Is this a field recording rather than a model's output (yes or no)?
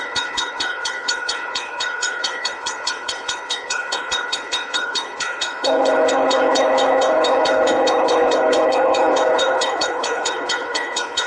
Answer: no